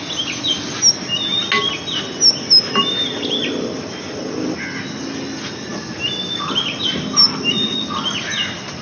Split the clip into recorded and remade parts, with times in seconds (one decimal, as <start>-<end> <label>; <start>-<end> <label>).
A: 0.0-8.8 recorded